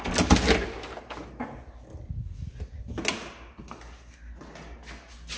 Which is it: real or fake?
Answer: real